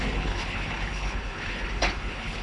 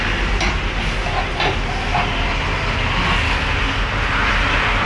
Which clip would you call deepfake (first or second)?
first